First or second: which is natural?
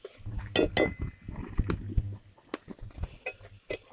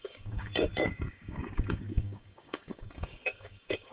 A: first